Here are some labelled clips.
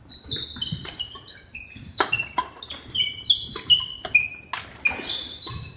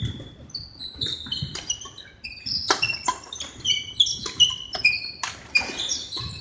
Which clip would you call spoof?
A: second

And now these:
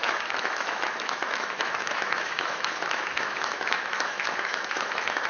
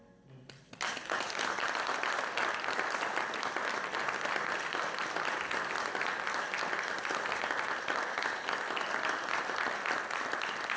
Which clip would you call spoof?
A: first